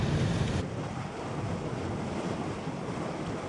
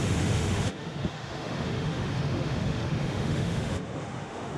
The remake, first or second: second